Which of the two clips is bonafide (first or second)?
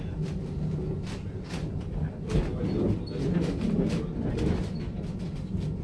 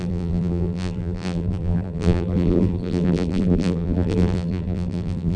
first